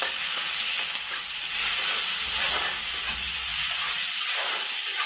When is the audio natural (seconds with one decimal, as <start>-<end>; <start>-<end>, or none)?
0.9-3.5